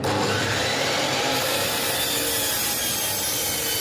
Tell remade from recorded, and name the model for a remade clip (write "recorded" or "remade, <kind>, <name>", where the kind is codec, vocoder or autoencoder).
recorded